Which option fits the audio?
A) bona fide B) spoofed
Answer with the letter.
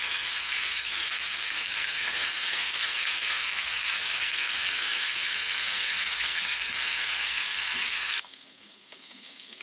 B